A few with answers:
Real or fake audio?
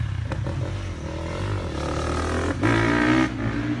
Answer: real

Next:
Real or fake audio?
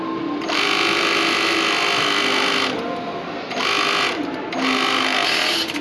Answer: real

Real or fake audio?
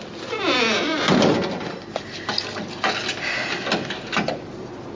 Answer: real